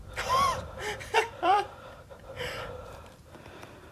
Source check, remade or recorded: remade